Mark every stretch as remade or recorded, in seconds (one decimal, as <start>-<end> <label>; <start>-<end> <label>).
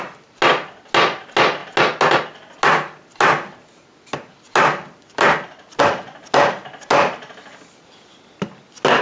0.0-9.0 recorded